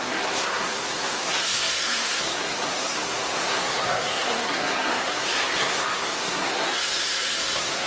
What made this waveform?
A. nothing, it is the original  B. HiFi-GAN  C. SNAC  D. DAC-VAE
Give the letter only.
C